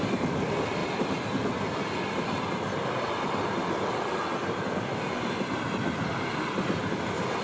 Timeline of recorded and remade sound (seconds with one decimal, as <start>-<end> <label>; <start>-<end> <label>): 0.0-7.4 recorded